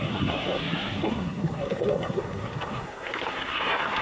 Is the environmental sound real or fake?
fake